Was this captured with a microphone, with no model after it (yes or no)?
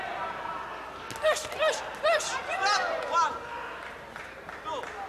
yes